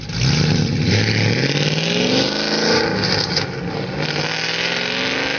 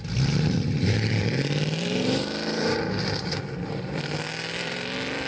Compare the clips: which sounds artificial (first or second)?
second